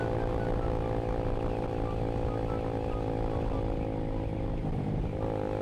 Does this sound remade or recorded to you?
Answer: recorded